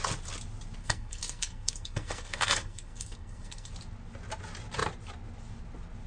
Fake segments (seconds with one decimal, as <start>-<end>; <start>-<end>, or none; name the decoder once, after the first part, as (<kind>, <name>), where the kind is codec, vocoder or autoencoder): 0.8-3.7 (codec, SNAC)